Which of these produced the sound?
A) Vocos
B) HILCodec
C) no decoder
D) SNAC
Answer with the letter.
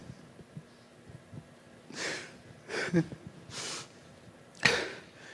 C